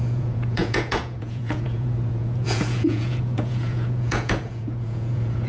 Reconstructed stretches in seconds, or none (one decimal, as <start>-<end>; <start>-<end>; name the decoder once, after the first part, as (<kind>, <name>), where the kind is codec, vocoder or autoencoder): 0.0-5.5 (vocoder, Vocos)